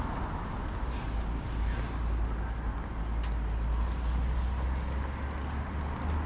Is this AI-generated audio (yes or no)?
no